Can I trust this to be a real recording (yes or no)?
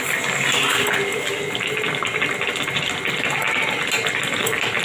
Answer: yes